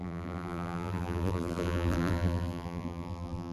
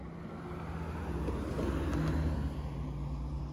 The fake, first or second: first